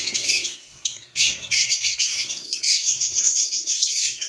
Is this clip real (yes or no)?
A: no